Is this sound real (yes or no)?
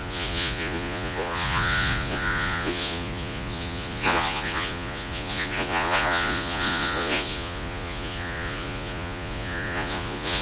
no